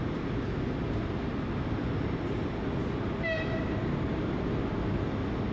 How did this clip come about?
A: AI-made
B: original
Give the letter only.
B